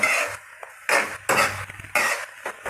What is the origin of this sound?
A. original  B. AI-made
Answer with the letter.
A